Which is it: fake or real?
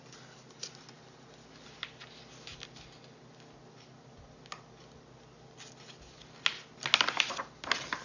real